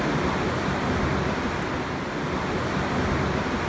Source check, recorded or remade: recorded